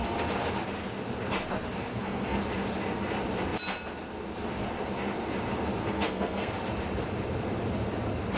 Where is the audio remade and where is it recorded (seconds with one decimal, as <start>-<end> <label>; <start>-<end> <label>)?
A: 0.0-1.9 recorded; 1.9-2.4 remade; 2.4-5.8 recorded; 5.8-6.5 remade; 6.5-8.4 recorded